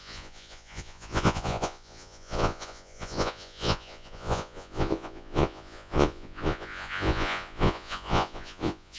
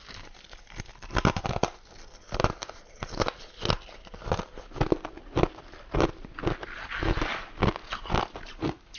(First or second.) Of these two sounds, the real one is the second